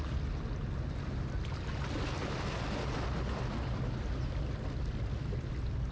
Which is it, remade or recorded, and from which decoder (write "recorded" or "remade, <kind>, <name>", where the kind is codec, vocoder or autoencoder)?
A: recorded